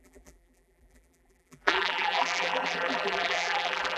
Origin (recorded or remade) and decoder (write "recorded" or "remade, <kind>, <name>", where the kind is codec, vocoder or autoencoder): remade, vocoder, BigVGAN v2